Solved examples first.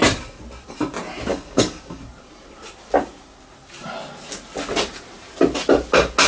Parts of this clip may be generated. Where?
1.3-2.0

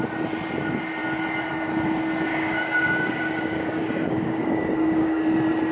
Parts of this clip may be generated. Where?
2.3-5.2